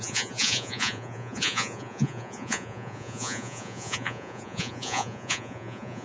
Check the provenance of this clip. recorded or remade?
remade